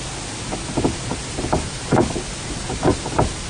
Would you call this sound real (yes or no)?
yes